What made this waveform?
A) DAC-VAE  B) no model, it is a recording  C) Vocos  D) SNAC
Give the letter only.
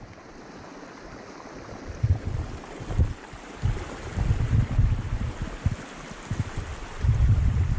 B